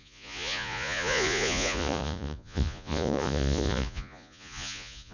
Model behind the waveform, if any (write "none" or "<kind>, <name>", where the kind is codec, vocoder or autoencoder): vocoder, Vocos